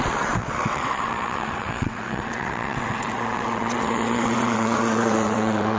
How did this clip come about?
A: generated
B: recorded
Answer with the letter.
A